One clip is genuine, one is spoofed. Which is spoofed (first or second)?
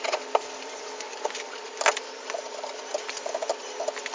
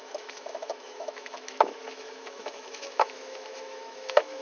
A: second